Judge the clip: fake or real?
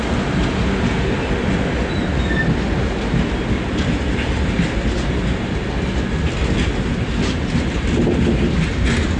real